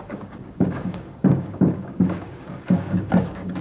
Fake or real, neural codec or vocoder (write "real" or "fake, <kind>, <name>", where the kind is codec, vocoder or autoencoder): fake, codec, DAC